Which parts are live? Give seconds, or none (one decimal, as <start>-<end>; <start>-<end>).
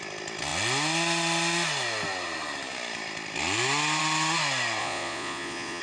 0.0-4.8